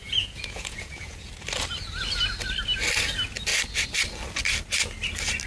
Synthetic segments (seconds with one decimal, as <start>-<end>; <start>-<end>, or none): 0.0-1.3

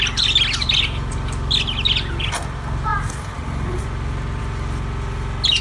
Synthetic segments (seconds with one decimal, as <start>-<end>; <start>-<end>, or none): none

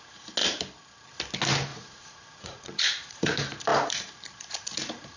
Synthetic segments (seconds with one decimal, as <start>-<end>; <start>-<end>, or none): 1.7-3.3

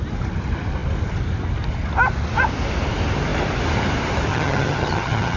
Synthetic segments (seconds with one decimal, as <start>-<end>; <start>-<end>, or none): 4.3-5.4

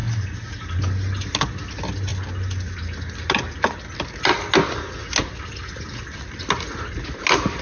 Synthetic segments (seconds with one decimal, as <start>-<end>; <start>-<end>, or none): none

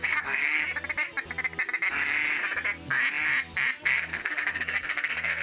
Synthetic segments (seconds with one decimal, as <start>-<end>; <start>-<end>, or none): 0.0-0.6; 3.8-5.4

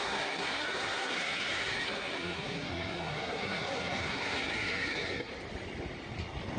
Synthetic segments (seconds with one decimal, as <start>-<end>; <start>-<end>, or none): 0.0-5.3